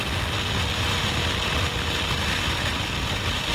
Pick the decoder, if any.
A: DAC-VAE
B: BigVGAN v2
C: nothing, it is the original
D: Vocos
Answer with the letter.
C